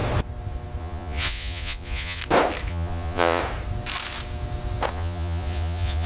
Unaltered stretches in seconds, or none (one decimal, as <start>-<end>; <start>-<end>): 0.0-0.8; 2.2-2.7; 3.4-4.9